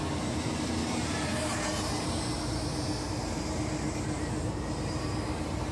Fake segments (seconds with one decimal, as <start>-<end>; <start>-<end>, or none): 0.0-5.7